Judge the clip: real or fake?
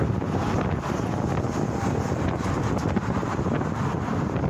real